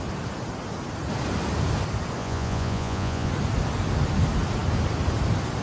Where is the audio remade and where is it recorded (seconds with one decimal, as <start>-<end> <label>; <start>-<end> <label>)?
0.0-2.2 recorded; 2.2-3.3 remade; 3.3-5.6 recorded

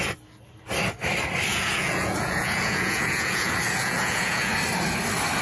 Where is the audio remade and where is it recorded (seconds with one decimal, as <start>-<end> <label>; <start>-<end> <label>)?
0.0-1.5 recorded; 1.5-4.5 remade; 4.5-5.4 recorded